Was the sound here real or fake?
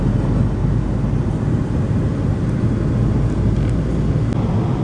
real